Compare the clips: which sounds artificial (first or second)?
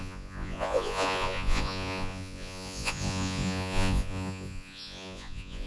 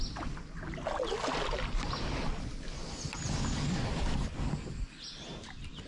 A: first